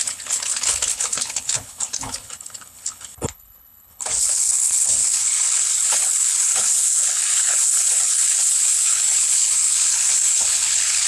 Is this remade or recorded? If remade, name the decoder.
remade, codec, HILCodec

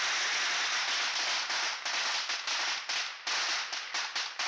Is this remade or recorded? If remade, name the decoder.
recorded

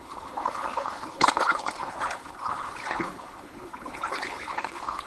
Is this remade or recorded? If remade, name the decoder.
remade, codec, HILCodec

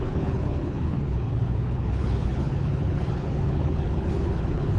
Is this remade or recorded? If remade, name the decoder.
remade, codec, HILCodec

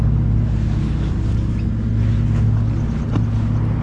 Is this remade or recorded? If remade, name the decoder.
recorded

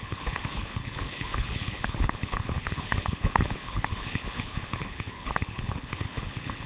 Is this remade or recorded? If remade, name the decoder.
remade, codec, HILCodec